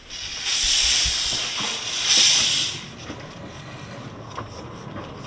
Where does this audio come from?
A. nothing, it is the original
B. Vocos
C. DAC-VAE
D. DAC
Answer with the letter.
A